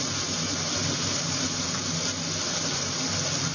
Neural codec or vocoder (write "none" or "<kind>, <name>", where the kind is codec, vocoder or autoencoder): none